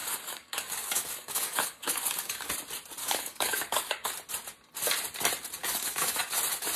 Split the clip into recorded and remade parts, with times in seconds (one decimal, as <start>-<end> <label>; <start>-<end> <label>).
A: 0.0-2.5 remade; 2.5-3.0 recorded; 3.0-4.1 remade; 4.1-5.6 recorded; 5.6-6.3 remade; 6.3-6.8 recorded